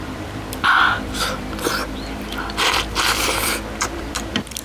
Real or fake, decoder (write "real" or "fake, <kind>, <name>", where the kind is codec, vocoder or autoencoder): fake, vocoder, BigVGAN v2